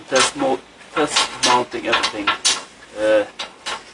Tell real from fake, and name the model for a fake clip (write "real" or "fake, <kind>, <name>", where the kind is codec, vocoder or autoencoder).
real